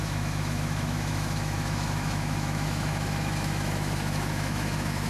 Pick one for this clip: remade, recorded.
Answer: remade